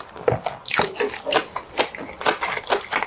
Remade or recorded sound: recorded